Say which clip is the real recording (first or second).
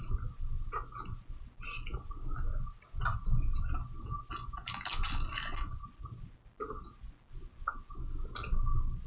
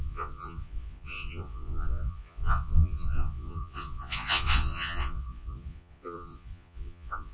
first